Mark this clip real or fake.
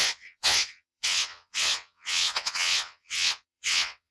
fake